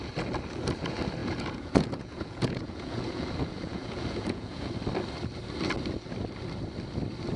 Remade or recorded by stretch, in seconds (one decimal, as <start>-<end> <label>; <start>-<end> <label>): 0.0-1.2 recorded; 1.2-4.7 remade; 4.7-7.4 recorded